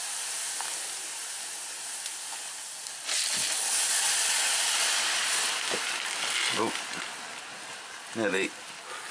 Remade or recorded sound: recorded